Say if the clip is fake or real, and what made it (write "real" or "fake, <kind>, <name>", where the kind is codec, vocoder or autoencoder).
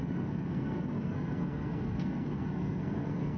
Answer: fake, codec, SNAC